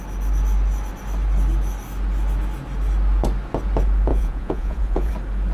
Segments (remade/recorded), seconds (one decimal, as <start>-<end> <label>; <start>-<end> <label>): 0.0-4.1 recorded; 4.1-5.1 remade; 5.1-5.5 recorded